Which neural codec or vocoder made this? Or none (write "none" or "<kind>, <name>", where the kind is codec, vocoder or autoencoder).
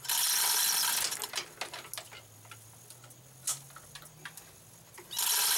none